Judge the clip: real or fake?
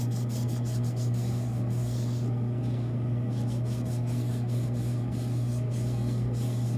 fake